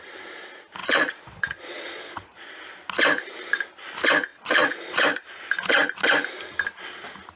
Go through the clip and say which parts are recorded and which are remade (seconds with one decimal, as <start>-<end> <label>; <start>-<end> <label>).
0.0-0.8 recorded; 0.8-2.5 remade; 2.5-4.3 recorded; 4.3-5.0 remade; 5.0-7.4 recorded